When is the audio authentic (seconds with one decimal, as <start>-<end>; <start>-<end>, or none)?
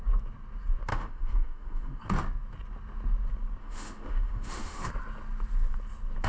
0.0-0.9; 2.0-3.6; 4.9-6.3